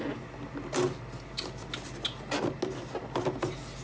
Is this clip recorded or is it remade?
recorded